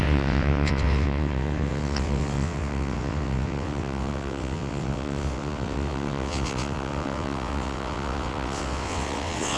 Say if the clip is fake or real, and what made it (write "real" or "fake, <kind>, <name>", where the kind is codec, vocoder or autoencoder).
fake, vocoder, WaveNeXt